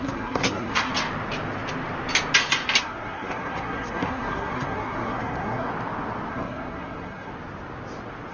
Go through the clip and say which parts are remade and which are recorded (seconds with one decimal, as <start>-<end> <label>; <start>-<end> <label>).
0.0-0.9 remade; 0.9-2.8 recorded; 2.8-5.7 remade; 5.7-6.3 recorded; 6.3-7.3 remade; 7.3-8.3 recorded